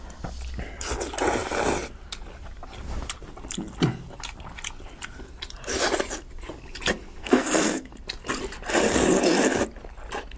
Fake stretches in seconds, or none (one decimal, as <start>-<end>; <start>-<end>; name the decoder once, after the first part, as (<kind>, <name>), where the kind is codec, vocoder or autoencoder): 7.2-7.9 (codec, SNAC)